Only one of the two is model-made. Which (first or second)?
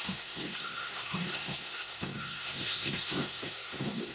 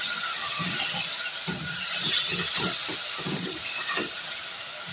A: first